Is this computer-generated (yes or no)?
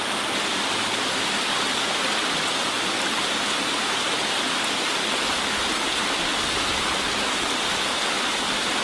no